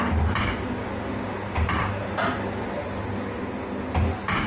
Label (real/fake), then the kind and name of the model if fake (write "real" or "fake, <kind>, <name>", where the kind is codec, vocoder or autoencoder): real